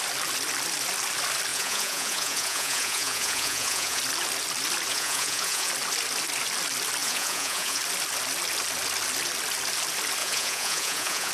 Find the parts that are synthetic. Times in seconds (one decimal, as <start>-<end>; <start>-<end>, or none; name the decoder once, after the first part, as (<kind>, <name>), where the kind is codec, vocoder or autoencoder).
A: 1.5-4.0 (vocoder, Vocos); 4.9-5.7; 7.0-7.8; 10.2-11.3